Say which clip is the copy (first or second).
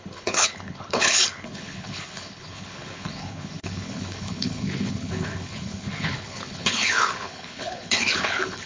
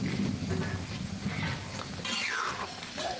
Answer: first